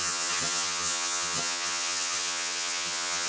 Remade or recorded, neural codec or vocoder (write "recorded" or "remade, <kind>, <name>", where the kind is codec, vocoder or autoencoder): remade, vocoder, HiFi-GAN